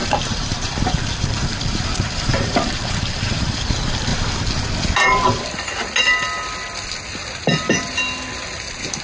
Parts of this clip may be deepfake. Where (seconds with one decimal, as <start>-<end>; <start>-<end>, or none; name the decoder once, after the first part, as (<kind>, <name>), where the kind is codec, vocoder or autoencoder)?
0.0-4.1 (vocoder, BigVGAN v2)